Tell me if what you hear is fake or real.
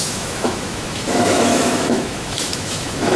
fake